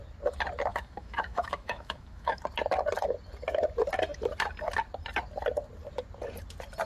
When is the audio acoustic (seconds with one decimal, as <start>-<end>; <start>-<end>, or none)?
0.0-0.7; 2.4-6.9